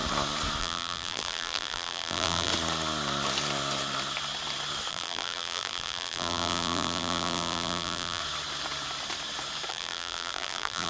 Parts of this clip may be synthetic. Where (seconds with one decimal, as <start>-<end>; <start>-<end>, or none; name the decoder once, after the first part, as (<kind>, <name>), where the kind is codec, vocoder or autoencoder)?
0.6-2.5 (vocoder, BigVGAN v2); 4.9-8.2; 9.7-10.9